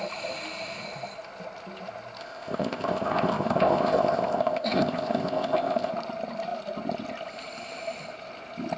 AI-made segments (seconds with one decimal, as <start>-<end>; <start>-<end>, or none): 2.2-5.9